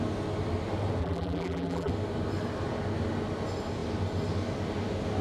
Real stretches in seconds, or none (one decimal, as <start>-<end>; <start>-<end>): 0.0-1.0; 1.9-5.2